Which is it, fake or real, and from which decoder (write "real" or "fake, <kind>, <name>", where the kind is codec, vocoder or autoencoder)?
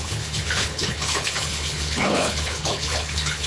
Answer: fake, codec, HILCodec